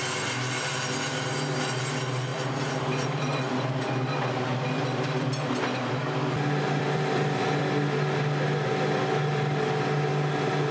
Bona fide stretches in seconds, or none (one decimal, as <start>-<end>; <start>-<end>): 0.0-2.3; 3.8-4.5; 7.6-10.7